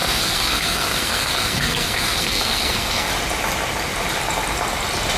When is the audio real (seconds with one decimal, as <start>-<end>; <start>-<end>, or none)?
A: 3.1-5.2

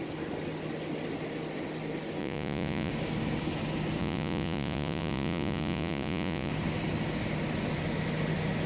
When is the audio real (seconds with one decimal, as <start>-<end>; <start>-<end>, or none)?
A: 0.0-2.2; 2.9-4.0; 6.5-8.7

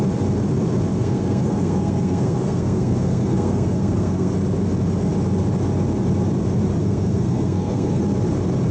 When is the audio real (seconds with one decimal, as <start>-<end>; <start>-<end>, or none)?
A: 0.0-0.9; 4.3-6.8; 8.0-8.7

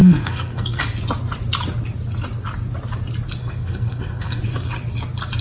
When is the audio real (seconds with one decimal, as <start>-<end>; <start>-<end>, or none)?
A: 0.8-3.4; 4.4-5.4

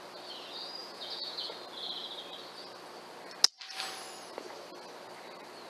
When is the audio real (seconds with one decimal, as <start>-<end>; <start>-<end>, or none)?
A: 0.0-0.8; 1.5-5.7

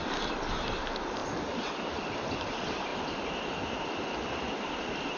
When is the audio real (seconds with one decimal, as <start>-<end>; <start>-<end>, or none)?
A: 0.0-5.2

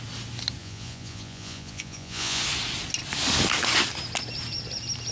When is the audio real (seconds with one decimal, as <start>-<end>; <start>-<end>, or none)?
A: 0.0-0.6; 2.4-5.1

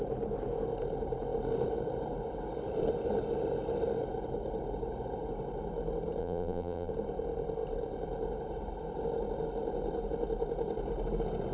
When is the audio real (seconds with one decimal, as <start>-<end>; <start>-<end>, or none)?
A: 0.0-6.2; 6.9-11.5